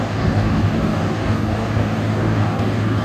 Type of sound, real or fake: fake